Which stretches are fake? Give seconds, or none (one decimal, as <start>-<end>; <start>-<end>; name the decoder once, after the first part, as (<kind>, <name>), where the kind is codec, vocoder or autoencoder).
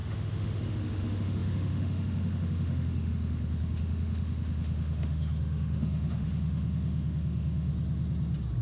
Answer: 0.0-7.7 (autoencoder, DAC-VAE)